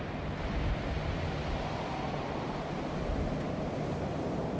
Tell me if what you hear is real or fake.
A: real